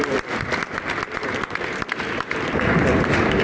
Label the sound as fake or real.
real